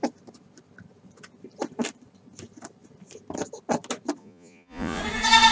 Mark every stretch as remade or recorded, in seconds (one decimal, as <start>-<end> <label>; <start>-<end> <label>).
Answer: 0.0-4.2 recorded; 4.2-5.0 remade; 5.0-5.5 recorded